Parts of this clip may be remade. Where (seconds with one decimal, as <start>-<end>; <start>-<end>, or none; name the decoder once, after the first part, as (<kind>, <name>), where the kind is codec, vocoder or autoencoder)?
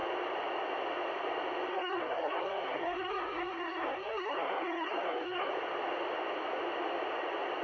1.7-5.5 (codec, SNAC)